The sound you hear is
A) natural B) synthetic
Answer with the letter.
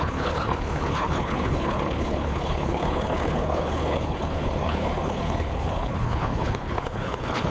B